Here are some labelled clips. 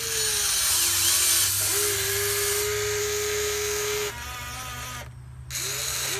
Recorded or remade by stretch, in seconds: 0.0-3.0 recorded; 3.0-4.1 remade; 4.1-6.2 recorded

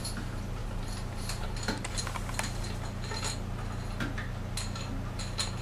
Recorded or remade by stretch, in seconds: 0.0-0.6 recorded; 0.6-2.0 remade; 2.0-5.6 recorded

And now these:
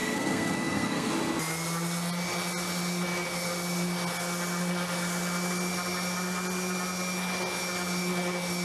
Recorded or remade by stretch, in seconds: 0.0-1.1 remade; 1.1-8.6 recorded

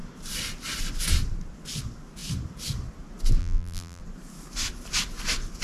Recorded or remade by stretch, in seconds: 0.0-3.4 recorded; 3.4-4.0 remade; 4.0-5.6 recorded